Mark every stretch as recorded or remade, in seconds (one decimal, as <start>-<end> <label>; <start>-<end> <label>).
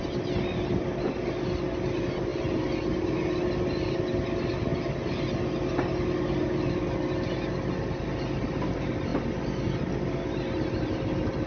0.0-11.5 recorded